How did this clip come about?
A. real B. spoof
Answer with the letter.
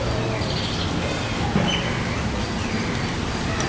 A